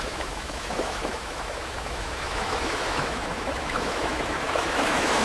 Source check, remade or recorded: remade